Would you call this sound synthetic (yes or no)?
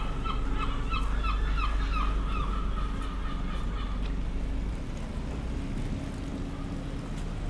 no